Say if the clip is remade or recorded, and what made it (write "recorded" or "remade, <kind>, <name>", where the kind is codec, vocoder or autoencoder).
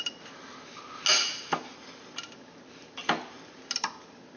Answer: recorded